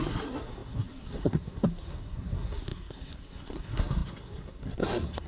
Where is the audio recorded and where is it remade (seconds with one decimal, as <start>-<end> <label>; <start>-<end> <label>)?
0.0-5.3 remade